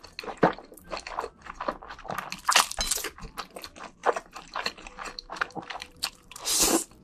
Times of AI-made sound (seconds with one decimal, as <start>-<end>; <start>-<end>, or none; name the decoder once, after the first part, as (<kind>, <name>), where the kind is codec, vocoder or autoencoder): 4.0-6.4 (vocoder, BigVGAN v2)